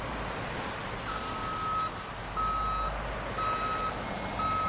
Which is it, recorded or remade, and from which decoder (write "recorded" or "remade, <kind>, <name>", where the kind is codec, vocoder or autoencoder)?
recorded